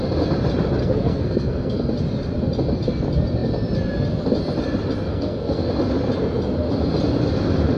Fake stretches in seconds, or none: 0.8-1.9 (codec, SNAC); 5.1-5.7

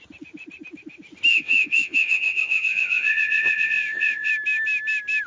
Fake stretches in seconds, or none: 1.3-4.3 (vocoder, WaveNeXt)

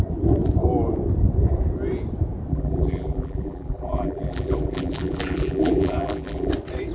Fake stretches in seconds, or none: 2.5-6.5 (vocoder, BigVGAN v2)

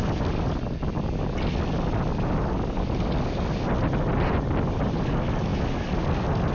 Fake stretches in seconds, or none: none

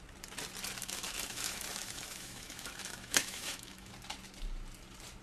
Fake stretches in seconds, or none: 0.8-3.9 (autoencoder, DAC-VAE)

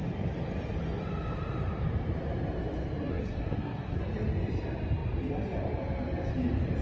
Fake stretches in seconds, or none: 3.1-4.0 (codec, SNAC)